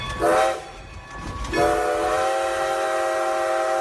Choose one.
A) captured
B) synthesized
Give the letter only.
A